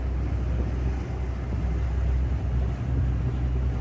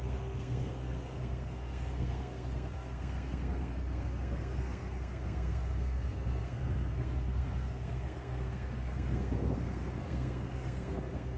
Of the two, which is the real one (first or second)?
first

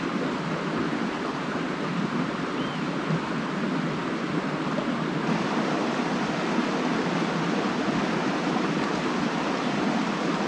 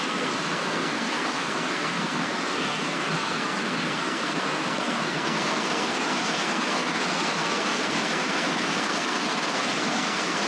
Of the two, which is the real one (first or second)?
first